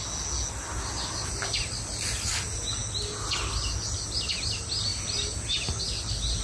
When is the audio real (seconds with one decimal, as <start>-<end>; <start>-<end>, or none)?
0.0-6.4